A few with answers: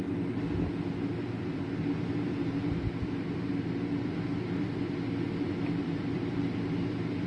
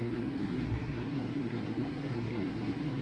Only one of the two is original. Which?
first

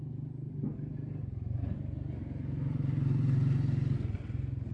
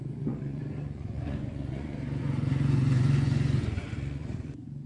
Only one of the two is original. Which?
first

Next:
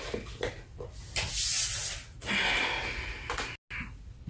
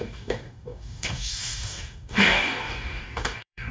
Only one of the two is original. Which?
first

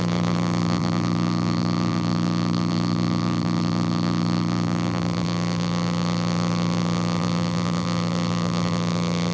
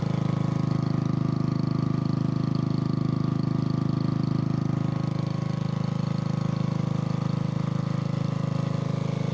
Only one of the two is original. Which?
second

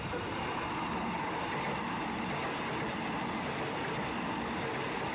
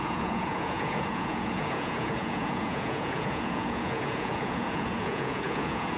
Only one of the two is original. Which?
first